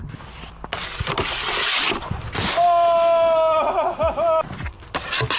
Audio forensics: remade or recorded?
recorded